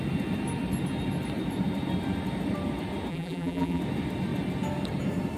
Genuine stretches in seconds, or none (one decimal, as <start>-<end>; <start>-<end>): 0.0-3.1; 3.8-5.4